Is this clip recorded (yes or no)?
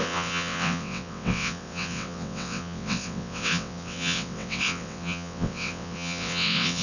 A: no